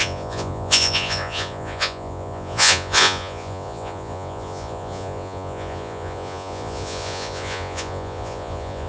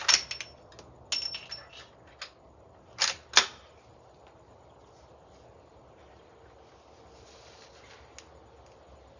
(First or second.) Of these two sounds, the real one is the second